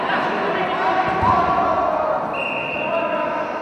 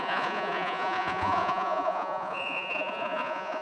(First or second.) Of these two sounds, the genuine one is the first